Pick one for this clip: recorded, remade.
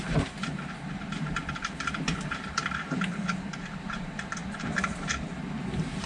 remade